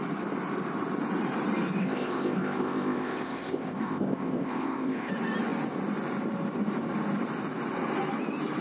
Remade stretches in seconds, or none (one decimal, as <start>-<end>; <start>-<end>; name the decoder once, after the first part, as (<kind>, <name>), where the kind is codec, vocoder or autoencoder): 1.8-5.1 (codec, ZipCodec)